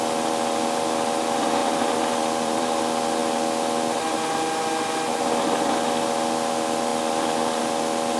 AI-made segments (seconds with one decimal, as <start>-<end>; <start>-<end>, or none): 1.6-2.8; 6.9-7.6